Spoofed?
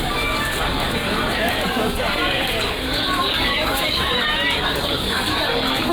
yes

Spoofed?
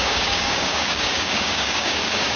yes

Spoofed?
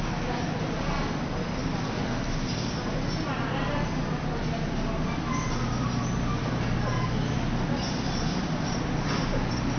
no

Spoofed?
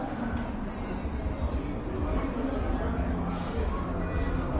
no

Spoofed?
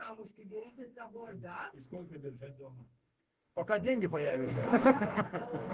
yes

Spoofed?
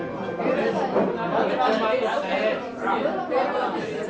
no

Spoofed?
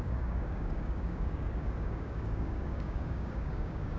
yes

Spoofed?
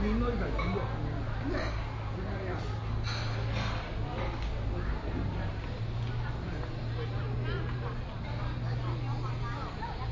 no